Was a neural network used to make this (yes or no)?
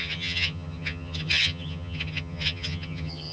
yes